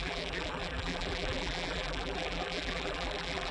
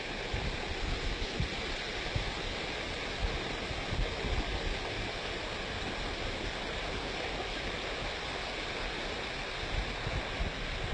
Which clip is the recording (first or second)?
second